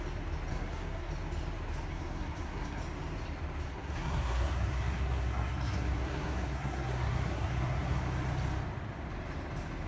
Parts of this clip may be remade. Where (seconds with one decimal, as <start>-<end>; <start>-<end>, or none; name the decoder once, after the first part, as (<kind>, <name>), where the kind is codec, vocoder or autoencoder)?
0.5-1.1 (codec, SNAC); 1.9-2.8; 3.7-8.0